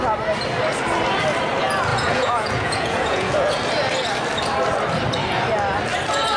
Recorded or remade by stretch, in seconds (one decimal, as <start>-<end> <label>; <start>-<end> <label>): 0.0-1.9 recorded; 1.9-3.5 remade; 3.5-6.4 recorded